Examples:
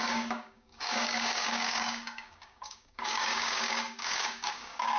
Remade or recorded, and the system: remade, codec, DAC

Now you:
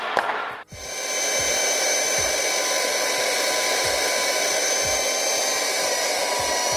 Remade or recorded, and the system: recorded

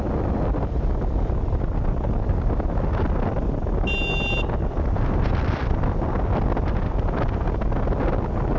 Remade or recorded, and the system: recorded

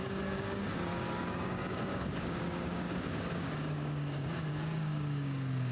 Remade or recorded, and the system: remade, codec, DAC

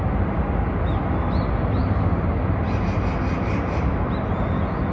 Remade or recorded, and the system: recorded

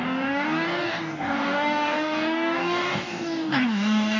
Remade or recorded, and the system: remade, codec, DAC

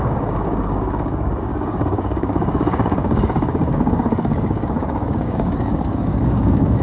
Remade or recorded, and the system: remade, codec, DAC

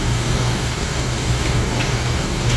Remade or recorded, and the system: remade, codec, DAC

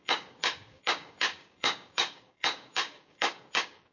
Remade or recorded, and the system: remade, codec, DAC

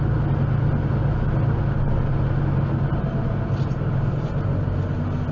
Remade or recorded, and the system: recorded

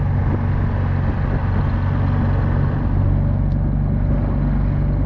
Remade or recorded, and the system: recorded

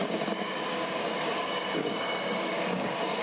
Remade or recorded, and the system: remade, codec, DAC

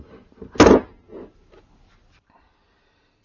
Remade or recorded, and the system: recorded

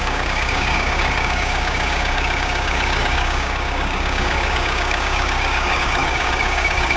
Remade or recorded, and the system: remade, codec, DAC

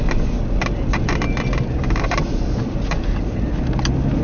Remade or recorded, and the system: recorded